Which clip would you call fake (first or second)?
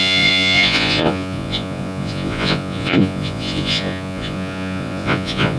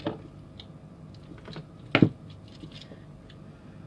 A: first